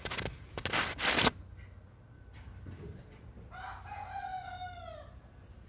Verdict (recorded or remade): recorded